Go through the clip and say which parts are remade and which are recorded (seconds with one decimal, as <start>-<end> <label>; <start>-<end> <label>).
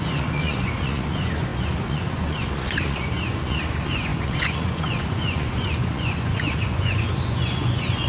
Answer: 0.0-8.1 remade